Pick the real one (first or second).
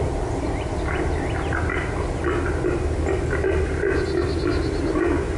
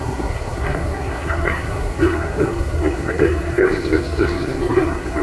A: first